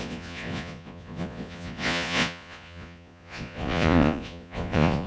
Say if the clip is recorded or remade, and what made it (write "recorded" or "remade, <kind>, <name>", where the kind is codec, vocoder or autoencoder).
remade, vocoder, Vocos